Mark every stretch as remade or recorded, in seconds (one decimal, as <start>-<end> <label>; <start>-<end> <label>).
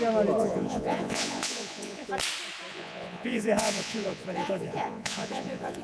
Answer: 0.0-0.4 recorded; 0.4-2.1 remade; 2.1-2.7 recorded; 2.7-5.8 remade